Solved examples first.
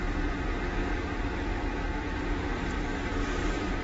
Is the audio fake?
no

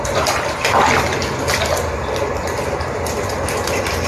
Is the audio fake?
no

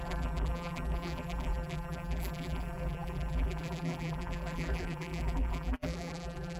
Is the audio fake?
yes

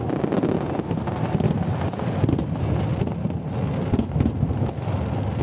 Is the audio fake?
no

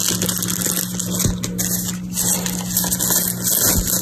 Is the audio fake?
no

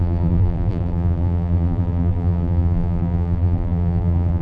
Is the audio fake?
yes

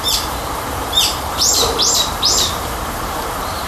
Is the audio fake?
yes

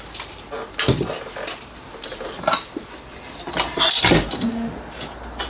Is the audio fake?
no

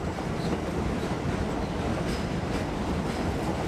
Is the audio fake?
yes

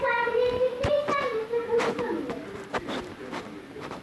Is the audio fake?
no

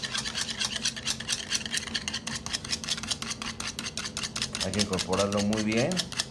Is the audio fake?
no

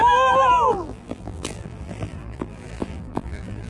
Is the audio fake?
yes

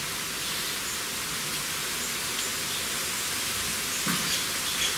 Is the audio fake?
no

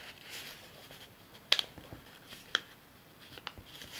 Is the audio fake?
yes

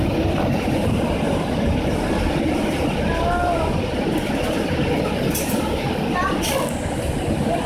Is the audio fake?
yes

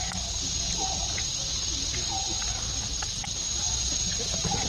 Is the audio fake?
no